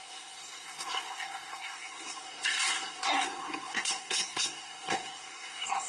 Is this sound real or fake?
fake